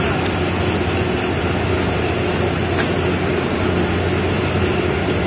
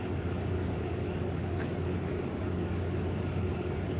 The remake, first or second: second